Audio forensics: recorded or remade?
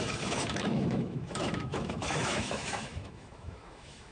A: remade